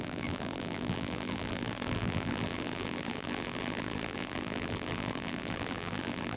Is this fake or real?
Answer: fake